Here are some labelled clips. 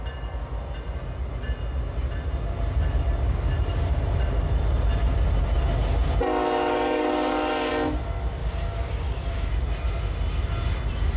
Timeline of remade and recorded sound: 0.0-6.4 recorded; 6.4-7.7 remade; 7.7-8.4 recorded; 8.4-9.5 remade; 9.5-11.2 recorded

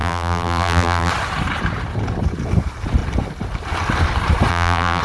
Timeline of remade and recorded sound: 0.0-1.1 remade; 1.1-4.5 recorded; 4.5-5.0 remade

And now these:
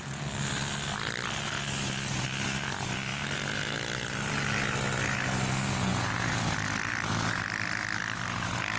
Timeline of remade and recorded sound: 0.0-8.8 recorded